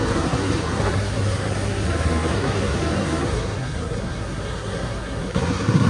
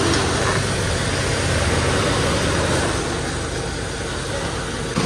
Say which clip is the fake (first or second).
first